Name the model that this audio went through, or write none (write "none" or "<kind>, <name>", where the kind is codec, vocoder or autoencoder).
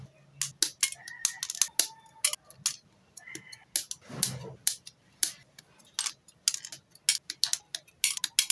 none